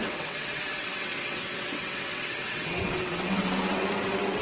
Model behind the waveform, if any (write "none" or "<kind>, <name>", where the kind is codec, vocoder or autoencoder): vocoder, WaveNeXt